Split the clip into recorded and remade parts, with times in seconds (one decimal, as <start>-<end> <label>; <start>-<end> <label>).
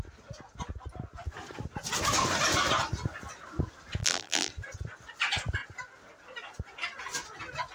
0.0-4.0 recorded; 4.0-4.5 remade; 4.5-7.7 recorded